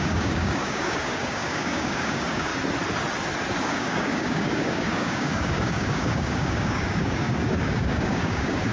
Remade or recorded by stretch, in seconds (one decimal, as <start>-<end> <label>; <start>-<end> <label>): 0.0-2.5 remade; 2.5-3.6 recorded; 3.6-8.7 remade